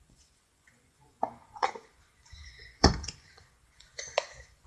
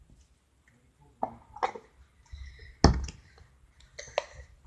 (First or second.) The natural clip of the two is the second